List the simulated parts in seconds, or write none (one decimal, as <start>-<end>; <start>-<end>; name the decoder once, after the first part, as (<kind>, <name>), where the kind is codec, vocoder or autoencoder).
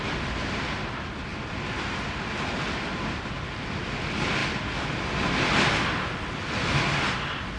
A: none